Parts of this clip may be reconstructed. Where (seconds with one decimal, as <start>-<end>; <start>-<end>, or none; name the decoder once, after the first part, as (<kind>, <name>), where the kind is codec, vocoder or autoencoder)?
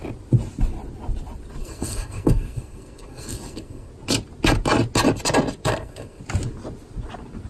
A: 1.6-3.9 (codec, SNAC); 5.6-6.2